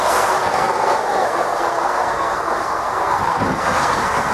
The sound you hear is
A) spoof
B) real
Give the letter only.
A